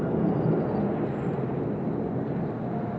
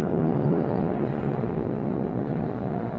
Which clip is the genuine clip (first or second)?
first